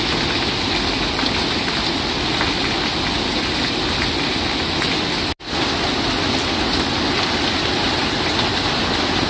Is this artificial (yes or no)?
no